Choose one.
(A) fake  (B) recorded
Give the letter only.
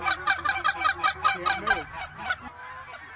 B